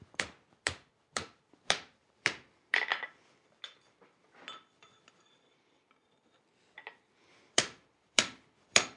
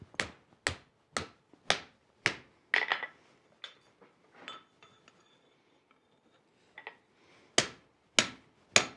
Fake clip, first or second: first